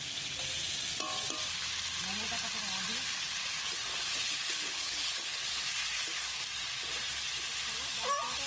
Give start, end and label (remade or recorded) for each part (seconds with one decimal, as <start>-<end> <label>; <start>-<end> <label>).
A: 0.0-4.1 recorded; 4.1-5.6 remade; 5.6-8.5 recorded